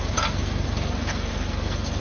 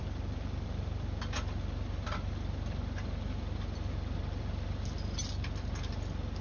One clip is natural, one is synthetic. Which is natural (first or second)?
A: second